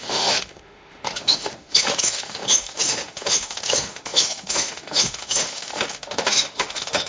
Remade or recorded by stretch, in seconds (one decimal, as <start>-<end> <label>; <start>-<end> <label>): 0.0-7.1 remade